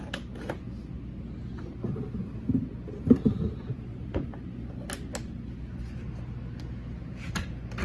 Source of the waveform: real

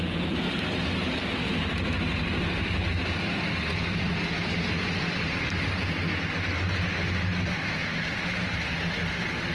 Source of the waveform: real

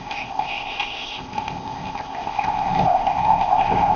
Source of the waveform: fake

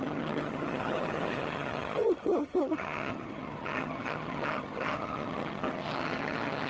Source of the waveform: fake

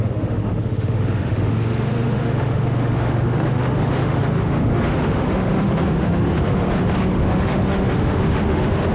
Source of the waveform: fake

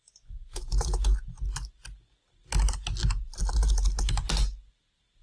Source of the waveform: real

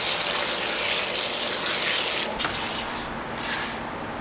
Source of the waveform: real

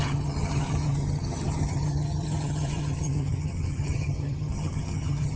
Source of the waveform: fake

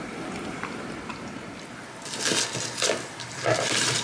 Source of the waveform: real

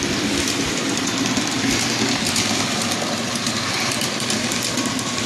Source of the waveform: real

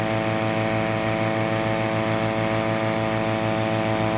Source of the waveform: real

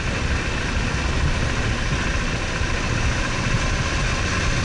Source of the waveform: real